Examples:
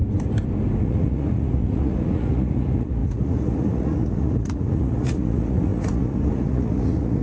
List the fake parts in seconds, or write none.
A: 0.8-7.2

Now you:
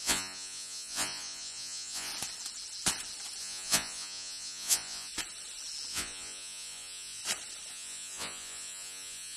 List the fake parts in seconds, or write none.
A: 0.0-2.1; 3.4-5.1; 5.9-7.2; 7.7-9.4

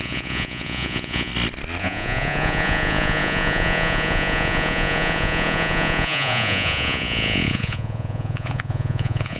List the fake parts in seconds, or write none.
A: 0.0-1.3; 1.8-9.4